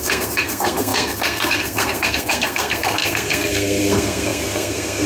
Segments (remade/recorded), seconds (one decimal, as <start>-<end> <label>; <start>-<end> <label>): 0.0-5.1 remade